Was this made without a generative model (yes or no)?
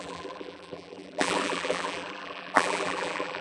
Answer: no